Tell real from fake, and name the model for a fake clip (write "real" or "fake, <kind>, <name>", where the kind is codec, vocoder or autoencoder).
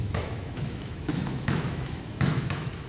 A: fake, autoencoder, DAC-VAE